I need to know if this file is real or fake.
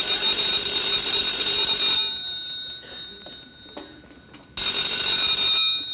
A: real